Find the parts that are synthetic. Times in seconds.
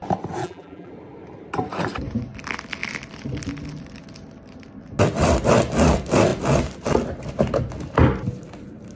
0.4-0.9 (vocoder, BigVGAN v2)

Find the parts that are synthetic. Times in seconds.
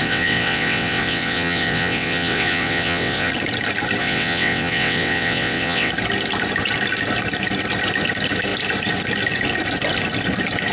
0.0-3.3 (vocoder, WaveNeXt); 4.0-5.9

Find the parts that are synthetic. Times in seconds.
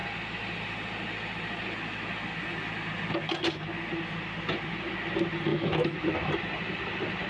5.5-6.3 (autoencoder, DAC-VAE)